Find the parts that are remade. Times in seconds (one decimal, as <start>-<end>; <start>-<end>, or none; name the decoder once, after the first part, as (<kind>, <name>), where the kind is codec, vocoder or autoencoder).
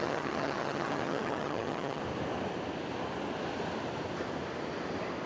0.0-2.0 (vocoder, HiFi-GAN)